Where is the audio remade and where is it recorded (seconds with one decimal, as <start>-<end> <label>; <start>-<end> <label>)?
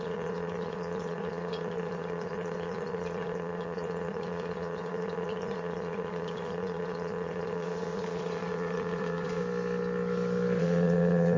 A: 0.0-9.4 remade; 9.4-10.6 recorded; 10.6-11.4 remade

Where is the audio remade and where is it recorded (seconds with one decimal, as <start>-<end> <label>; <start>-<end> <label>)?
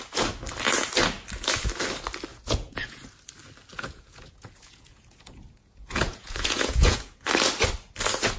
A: 0.0-2.3 recorded; 2.3-3.1 remade; 3.1-3.7 recorded; 3.7-7.3 remade; 7.3-8.4 recorded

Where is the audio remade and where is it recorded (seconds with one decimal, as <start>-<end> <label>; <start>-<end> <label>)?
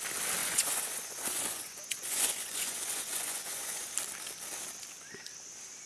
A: 0.0-0.4 recorded; 0.4-3.9 remade; 3.9-5.9 recorded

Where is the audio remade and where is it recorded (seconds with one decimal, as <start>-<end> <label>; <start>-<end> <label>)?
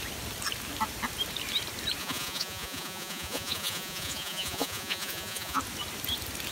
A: 0.0-2.0 recorded; 2.0-5.6 remade; 5.6-6.5 recorded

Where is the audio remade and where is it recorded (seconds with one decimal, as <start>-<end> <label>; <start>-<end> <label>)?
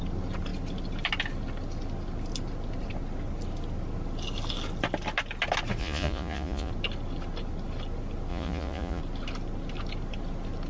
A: 0.0-5.8 recorded; 5.8-6.7 remade; 6.7-8.3 recorded; 8.3-9.0 remade; 9.0-10.7 recorded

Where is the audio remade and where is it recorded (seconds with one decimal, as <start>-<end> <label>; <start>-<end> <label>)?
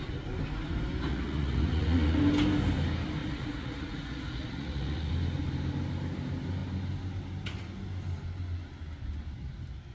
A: 0.0-1.1 recorded; 1.1-2.2 remade; 2.2-3.2 recorded; 3.2-5.1 remade; 5.1-9.9 recorded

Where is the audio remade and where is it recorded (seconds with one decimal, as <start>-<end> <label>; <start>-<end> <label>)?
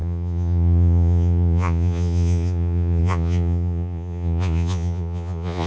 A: 0.0-5.7 remade